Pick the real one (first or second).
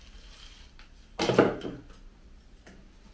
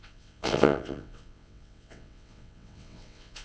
first